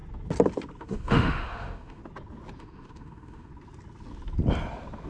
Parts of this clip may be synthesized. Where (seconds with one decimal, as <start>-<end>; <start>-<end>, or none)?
0.8-2.0; 2.6-3.5